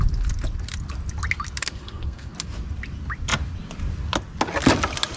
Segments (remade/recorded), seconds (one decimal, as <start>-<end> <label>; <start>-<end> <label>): 0.0-1.6 recorded; 1.6-2.3 remade; 2.3-5.2 recorded